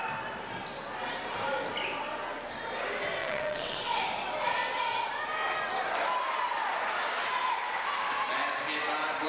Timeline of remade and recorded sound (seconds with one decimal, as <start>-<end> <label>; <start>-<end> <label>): 0.0-3.2 recorded; 3.2-4.0 remade; 4.0-9.3 recorded